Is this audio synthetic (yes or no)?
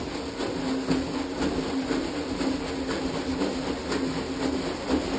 no